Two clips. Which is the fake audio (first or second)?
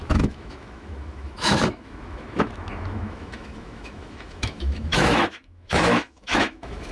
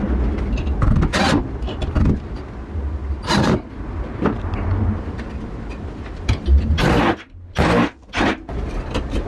first